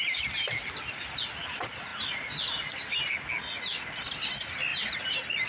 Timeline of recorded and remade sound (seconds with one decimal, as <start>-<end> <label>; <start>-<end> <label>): 0.0-5.5 recorded